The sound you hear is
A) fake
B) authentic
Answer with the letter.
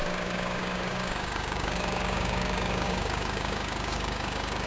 A